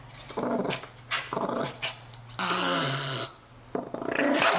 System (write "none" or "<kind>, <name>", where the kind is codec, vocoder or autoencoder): none